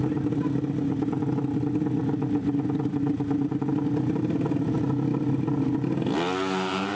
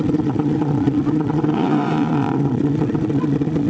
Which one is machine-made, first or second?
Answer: second